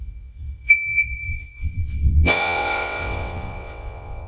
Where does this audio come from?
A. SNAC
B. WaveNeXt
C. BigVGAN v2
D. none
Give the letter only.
B